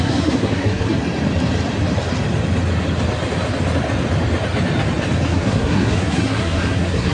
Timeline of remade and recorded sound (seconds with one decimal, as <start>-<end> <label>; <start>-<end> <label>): 0.0-1.0 remade; 1.0-5.3 recorded; 5.3-7.1 remade